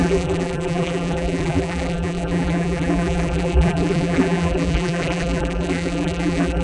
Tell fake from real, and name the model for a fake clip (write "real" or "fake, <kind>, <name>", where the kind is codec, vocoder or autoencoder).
fake, vocoder, BigVGAN v2